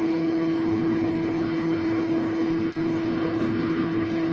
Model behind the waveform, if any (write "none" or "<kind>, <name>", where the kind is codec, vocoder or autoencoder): codec, HILCodec